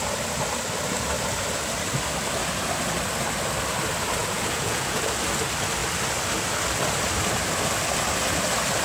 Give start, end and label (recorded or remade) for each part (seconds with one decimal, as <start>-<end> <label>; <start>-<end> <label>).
0.0-4.2 recorded; 4.2-5.0 remade; 5.0-8.8 recorded